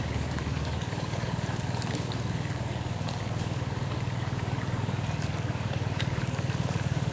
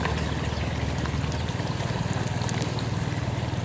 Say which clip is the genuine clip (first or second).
second